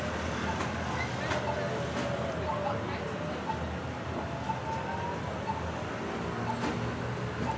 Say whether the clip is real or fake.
real